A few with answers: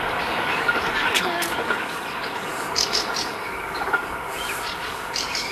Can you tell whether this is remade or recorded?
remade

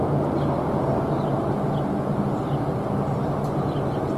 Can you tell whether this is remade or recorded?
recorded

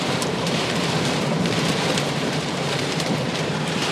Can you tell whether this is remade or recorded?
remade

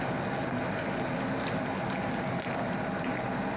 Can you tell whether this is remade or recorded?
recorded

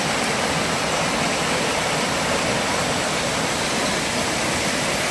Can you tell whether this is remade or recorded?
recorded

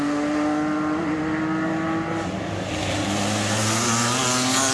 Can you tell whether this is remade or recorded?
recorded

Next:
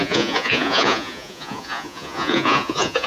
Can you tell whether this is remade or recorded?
remade